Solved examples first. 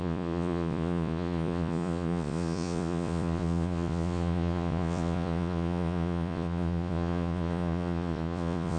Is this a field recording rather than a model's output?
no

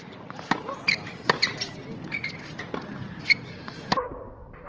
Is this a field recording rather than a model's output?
yes